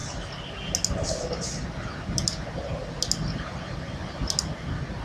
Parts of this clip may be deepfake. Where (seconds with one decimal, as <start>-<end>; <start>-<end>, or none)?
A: none